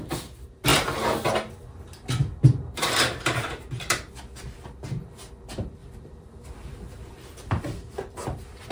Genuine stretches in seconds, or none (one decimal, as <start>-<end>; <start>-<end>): 0.0-5.8